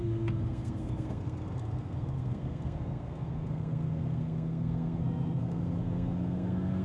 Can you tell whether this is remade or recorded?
remade